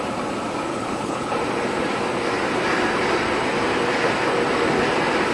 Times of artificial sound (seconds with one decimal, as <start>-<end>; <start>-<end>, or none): 0.7-1.3